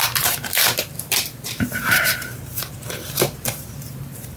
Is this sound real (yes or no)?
no